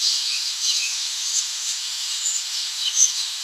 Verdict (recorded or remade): remade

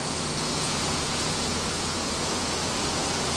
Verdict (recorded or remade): remade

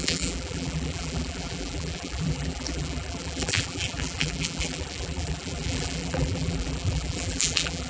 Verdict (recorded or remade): remade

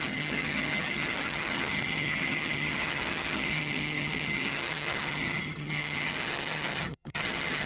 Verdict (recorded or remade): remade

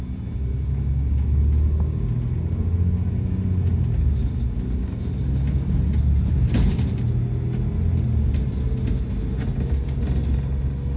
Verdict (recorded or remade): recorded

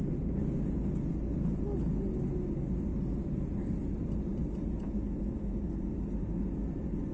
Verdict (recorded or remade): recorded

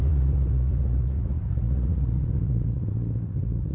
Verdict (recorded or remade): remade